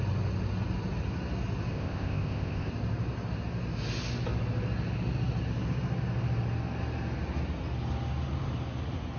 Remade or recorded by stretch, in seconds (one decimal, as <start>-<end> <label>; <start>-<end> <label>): 0.0-1.7 recorded; 1.7-2.7 remade; 2.7-9.2 recorded